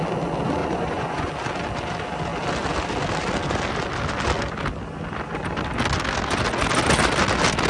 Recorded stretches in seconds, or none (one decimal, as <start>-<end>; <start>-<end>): 0.0-0.6; 1.3-7.7